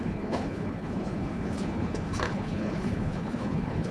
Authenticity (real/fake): fake